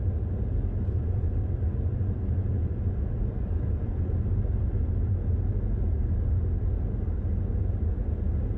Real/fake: real